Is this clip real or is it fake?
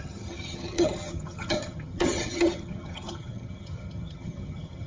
fake